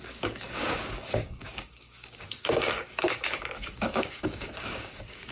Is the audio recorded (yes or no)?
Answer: no